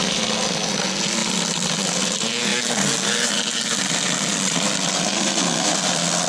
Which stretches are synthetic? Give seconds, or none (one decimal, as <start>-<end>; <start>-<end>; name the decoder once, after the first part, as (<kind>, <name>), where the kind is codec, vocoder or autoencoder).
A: none